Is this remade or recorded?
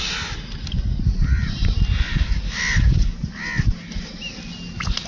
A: recorded